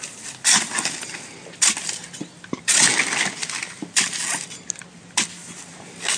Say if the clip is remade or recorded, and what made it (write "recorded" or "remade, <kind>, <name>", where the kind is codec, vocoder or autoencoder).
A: recorded